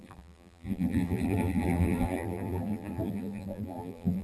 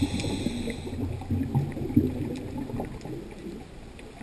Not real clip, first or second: first